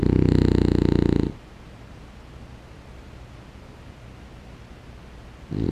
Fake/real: real